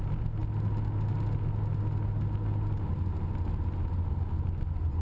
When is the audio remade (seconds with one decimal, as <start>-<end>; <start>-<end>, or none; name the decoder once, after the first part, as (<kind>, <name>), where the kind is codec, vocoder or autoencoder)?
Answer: none